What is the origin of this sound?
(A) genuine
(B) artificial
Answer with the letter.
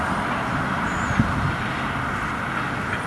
A